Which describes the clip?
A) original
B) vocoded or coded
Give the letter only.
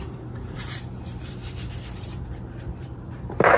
B